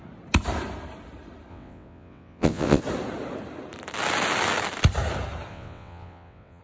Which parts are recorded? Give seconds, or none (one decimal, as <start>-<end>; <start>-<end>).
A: 0.0-1.5; 2.8-5.5